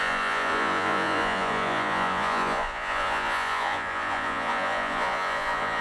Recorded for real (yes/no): no